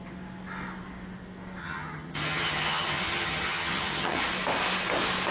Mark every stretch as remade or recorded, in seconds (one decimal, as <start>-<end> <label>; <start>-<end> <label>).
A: 0.0-1.6 recorded; 1.6-4.2 remade; 4.2-5.3 recorded